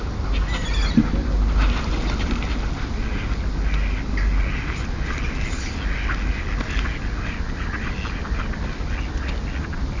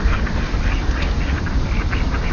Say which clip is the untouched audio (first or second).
first